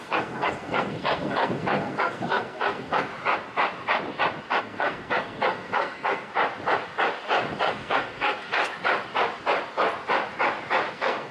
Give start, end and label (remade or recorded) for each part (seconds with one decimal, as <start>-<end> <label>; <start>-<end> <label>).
0.0-3.1 remade; 3.1-4.6 recorded; 4.6-6.3 remade; 6.3-7.6 recorded; 7.6-8.6 remade; 8.6-10.9 recorded; 10.9-11.3 remade